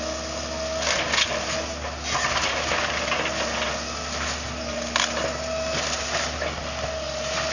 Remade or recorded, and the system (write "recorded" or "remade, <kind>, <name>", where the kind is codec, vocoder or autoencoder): recorded